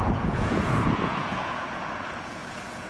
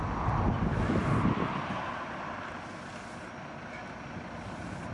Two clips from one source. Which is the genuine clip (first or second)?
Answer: second